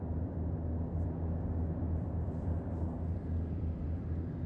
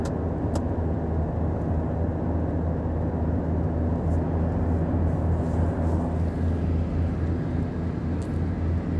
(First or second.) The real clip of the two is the second